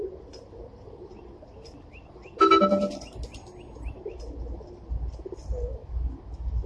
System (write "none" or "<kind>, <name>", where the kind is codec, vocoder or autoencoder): none